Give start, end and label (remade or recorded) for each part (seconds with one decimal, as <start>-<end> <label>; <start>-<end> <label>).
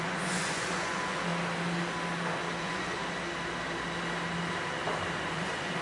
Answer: 0.0-1.3 remade; 1.3-2.6 recorded; 2.6-3.0 remade; 3.0-5.2 recorded; 5.2-5.8 remade